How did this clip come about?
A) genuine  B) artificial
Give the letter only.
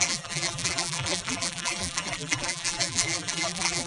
B